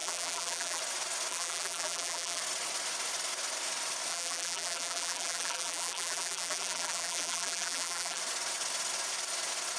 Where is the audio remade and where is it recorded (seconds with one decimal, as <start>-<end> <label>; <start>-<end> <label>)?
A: 0.0-0.8 remade; 0.8-1.3 recorded; 1.3-2.4 remade; 2.4-4.1 recorded; 4.1-8.2 remade; 8.2-9.8 recorded